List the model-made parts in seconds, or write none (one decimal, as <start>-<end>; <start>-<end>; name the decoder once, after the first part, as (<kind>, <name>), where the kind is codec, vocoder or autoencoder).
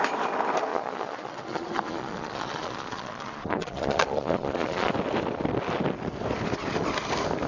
0.7-4.9 (vocoder, Vocos)